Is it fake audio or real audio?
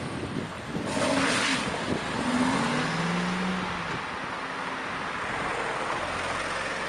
real